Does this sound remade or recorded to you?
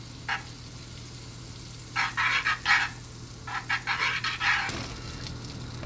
recorded